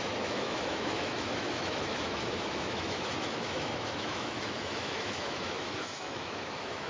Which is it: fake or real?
fake